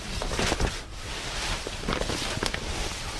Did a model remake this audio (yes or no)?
no